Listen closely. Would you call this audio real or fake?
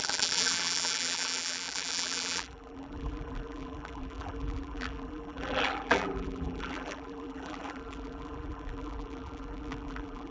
fake